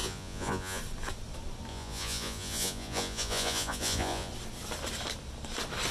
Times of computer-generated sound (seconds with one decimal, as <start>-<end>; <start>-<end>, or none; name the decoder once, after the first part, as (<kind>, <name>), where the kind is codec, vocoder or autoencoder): 0.0-0.8 (vocoder, Vocos); 1.7-4.3